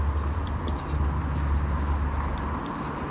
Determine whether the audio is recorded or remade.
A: recorded